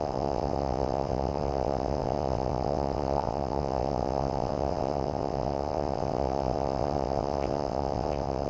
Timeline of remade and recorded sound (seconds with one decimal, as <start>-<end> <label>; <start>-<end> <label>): 0.0-8.5 remade